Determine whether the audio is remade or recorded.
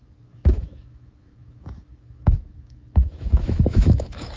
remade